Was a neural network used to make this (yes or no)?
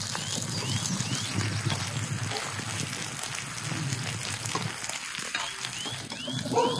no